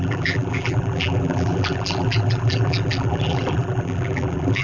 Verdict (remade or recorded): remade